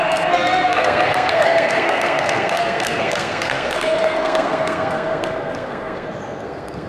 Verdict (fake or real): fake